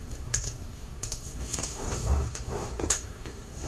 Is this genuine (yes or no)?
no